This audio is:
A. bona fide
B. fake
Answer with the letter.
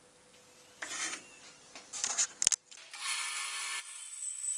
A